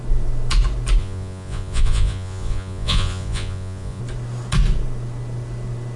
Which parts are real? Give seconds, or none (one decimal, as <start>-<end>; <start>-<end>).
0.0-1.0; 4.0-6.0